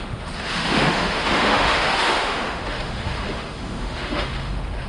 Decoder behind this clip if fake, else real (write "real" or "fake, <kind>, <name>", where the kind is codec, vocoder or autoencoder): fake, autoencoder, DAC-VAE